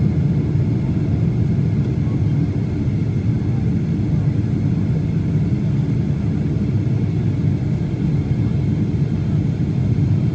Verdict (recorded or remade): recorded